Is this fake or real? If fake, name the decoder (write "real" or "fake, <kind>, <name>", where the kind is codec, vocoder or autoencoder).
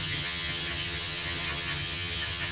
fake, vocoder, HiFi-GAN